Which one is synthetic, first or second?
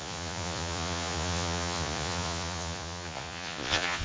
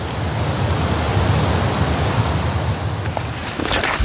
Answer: first